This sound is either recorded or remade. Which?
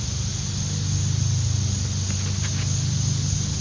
recorded